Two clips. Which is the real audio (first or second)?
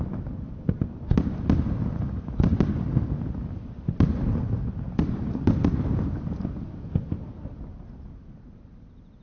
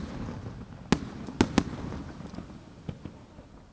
second